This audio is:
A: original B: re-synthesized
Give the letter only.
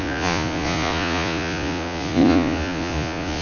B